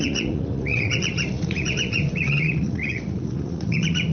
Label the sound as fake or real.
fake